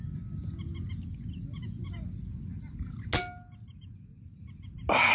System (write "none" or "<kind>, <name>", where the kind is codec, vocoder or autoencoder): none